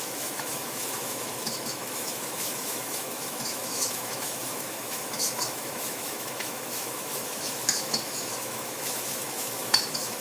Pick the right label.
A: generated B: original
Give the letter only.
A